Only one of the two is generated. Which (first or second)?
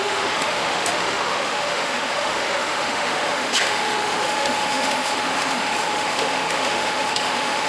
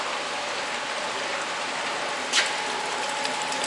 first